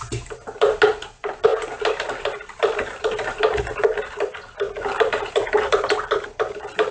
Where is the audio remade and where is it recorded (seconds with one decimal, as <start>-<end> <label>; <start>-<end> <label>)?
0.0-6.9 recorded